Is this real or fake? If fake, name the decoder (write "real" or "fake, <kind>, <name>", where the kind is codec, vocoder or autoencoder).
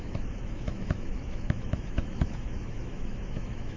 fake, autoencoder, DAC-VAE